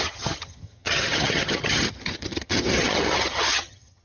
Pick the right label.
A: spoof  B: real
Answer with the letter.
A